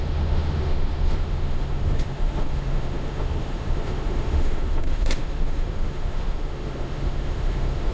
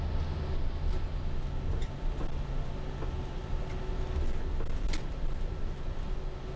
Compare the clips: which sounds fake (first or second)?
first